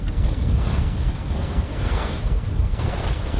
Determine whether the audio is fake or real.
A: fake